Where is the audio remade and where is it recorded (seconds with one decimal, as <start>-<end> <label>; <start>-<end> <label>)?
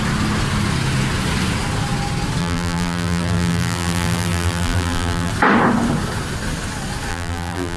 0.0-2.4 recorded; 2.4-5.3 remade; 5.3-7.1 recorded; 7.1-7.8 remade